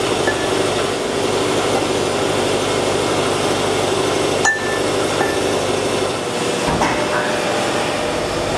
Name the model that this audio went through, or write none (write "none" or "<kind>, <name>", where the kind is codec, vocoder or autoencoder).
none